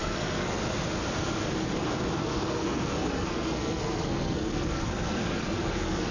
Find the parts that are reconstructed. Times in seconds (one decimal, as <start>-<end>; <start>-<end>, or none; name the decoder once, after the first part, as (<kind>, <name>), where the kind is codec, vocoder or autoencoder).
0.0-0.6 (codec, SNAC); 2.2-6.1